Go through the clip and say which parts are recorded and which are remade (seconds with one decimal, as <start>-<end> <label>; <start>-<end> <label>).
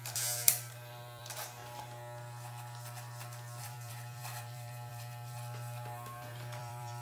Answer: 0.0-1.6 remade; 1.6-3.6 recorded; 3.6-7.0 remade